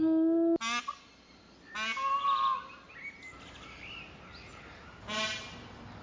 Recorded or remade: recorded